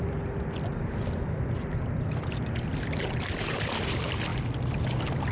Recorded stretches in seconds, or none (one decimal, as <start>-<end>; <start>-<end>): 0.0-5.3